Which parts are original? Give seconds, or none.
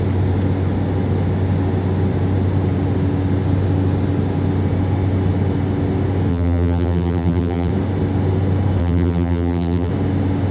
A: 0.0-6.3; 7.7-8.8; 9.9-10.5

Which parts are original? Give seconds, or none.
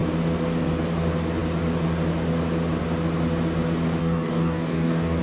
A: 0.0-4.0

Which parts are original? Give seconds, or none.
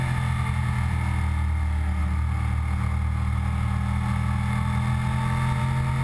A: 0.0-6.0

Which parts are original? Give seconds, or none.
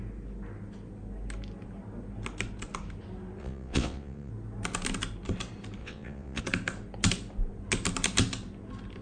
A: 0.0-3.4; 4.3-5.8; 6.4-9.0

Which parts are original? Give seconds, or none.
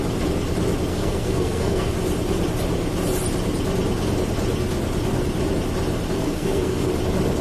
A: 0.0-0.9; 1.9-6.2; 6.9-7.4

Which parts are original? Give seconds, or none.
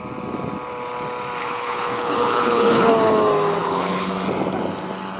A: 0.0-1.4; 2.9-3.6; 4.1-5.2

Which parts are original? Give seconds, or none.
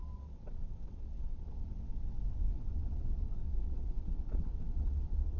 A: none